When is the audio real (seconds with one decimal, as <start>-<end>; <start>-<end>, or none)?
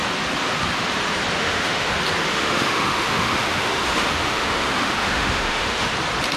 0.0-1.4; 1.9-2.3; 5.9-6.4